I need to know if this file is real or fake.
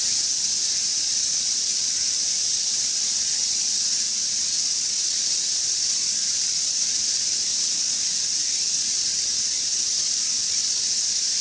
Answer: real